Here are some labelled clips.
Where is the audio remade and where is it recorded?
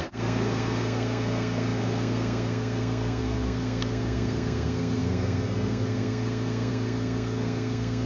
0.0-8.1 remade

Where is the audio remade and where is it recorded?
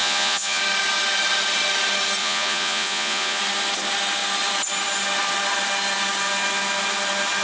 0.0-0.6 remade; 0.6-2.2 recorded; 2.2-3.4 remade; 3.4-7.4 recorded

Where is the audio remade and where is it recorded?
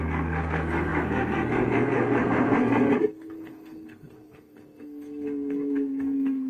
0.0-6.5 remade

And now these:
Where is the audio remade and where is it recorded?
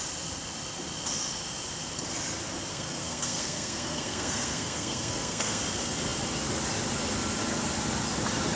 0.0-2.7 recorded; 2.7-5.6 remade; 5.6-8.6 recorded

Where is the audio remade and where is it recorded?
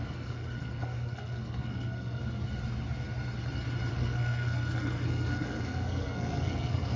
0.0-2.2 remade; 2.2-3.9 recorded; 3.9-7.0 remade